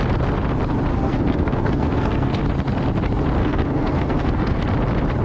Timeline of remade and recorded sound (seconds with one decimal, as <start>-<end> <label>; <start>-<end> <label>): 0.0-0.9 recorded; 0.9-2.4 remade; 2.4-3.4 recorded; 3.4-4.6 remade; 4.6-5.2 recorded